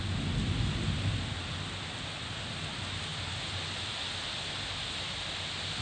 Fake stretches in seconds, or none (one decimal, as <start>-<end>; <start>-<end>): none